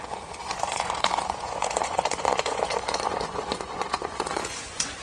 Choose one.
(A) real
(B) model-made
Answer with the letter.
B